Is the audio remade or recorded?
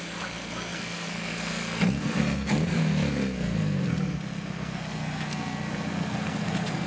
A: remade